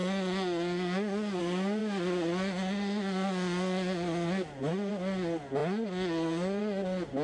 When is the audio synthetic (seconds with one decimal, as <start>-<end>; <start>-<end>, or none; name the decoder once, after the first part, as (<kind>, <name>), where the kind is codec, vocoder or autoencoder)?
none